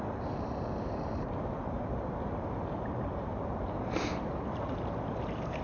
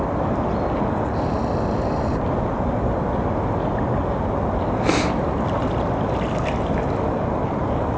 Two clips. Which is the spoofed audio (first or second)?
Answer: first